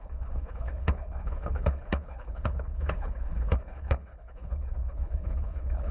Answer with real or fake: fake